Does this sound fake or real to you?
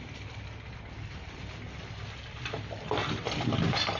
real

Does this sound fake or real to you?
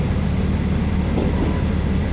real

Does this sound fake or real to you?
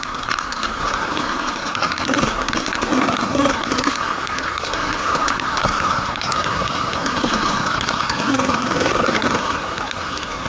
fake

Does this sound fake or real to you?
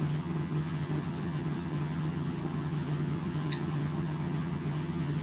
fake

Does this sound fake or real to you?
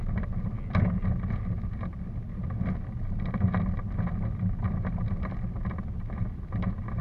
real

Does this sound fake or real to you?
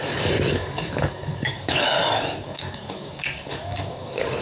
fake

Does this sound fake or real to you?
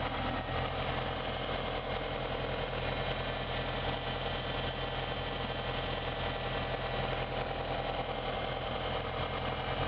real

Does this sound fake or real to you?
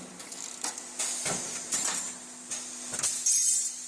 real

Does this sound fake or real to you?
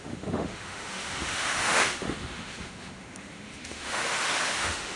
fake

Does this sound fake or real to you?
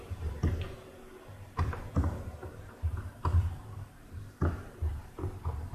fake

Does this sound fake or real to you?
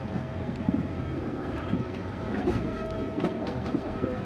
fake